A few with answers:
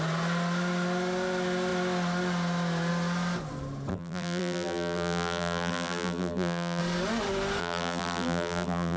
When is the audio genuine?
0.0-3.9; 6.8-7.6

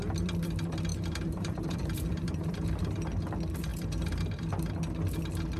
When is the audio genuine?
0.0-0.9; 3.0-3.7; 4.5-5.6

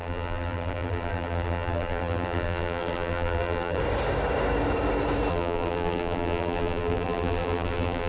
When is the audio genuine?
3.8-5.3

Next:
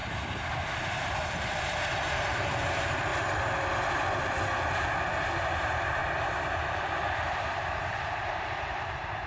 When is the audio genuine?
0.0-0.9; 3.1-5.4; 6.0-6.5